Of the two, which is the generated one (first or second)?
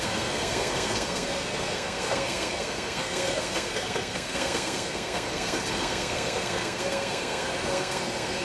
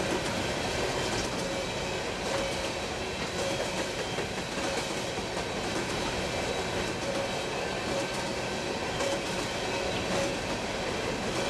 first